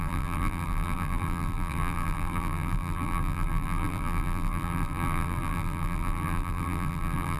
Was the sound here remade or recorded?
remade